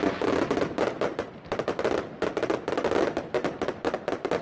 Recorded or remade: recorded